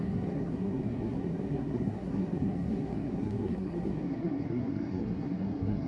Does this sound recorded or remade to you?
remade